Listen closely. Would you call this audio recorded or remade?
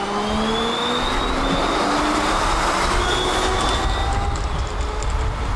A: recorded